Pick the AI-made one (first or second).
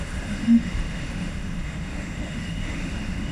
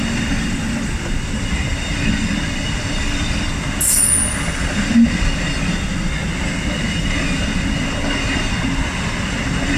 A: first